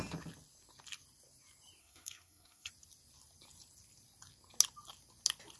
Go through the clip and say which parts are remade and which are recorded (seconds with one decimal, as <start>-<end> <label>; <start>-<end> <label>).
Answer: 0.0-1.8 recorded; 1.8-2.7 remade; 2.7-5.6 recorded